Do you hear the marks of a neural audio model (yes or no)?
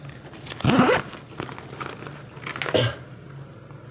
no